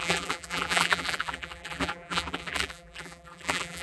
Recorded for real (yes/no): no